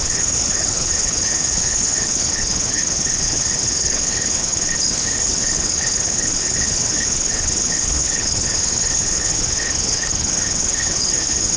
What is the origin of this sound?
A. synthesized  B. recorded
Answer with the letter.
A